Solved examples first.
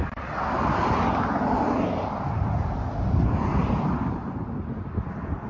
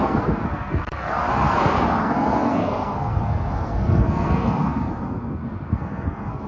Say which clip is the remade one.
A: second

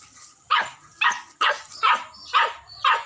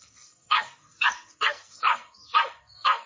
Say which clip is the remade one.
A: second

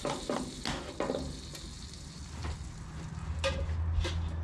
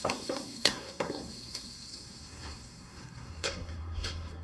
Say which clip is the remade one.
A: second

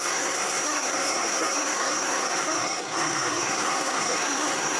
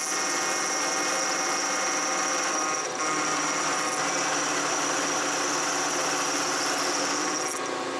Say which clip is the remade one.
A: first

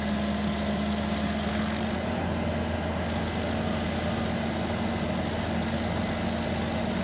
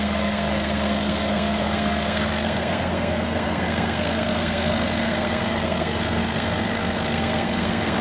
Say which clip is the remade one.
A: second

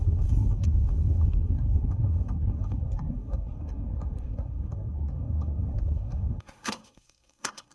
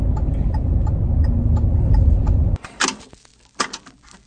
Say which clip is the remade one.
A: first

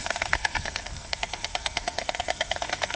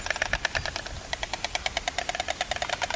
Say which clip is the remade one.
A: first